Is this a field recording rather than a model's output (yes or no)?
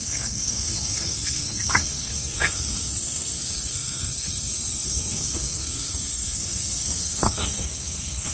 no